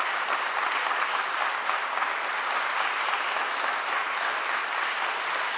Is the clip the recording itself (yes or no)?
yes